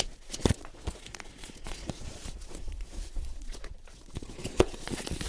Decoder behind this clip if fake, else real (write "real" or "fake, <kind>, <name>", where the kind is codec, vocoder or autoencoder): fake, vocoder, Vocos